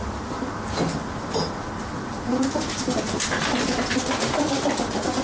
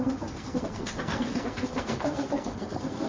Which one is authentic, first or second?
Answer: first